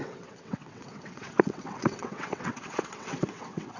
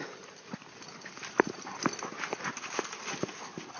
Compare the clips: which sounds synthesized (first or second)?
first